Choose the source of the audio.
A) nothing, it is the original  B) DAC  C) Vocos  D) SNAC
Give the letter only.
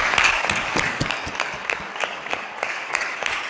B